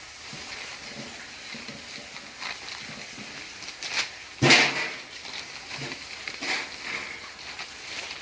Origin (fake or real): real